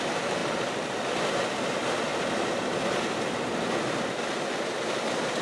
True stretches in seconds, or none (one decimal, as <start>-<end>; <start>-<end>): 0.0-5.4